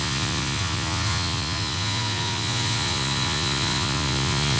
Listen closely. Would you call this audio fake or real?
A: fake